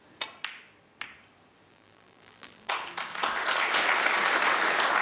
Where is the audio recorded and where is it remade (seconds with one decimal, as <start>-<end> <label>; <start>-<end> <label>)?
0.0-1.7 recorded; 1.7-2.7 remade; 2.7-5.0 recorded